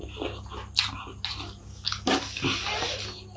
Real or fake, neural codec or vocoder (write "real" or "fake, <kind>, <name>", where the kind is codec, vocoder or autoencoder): real